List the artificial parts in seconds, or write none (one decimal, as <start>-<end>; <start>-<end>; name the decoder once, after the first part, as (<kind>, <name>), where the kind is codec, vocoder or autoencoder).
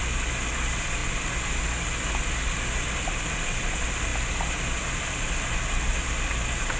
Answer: none